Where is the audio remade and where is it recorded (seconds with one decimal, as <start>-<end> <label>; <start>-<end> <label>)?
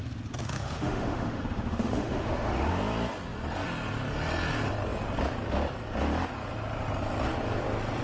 0.0-0.4 recorded; 0.4-2.7 remade; 2.7-8.0 recorded